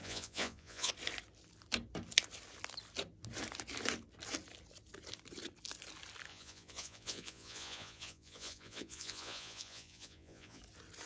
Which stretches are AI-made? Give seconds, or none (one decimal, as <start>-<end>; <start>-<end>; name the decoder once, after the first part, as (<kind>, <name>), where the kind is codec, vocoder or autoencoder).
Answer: 0.0-0.9 (vocoder, Vocos); 6.3-10.6